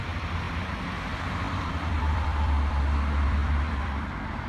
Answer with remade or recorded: remade